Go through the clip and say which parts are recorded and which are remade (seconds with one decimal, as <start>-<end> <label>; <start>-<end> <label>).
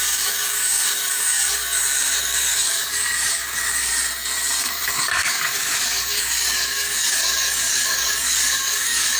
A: 0.0-1.6 remade; 1.6-2.2 recorded; 2.2-3.9 remade; 3.9-4.6 recorded; 4.6-9.2 remade